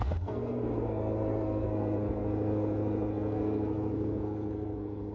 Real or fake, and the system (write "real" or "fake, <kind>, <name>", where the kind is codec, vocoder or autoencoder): fake, codec, SNAC